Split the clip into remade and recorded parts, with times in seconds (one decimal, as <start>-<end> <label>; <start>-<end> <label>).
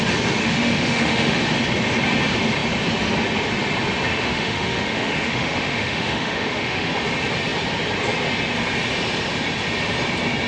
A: 0.0-0.4 recorded; 0.4-1.4 remade; 1.4-4.1 recorded; 4.1-6.9 remade; 6.9-10.5 recorded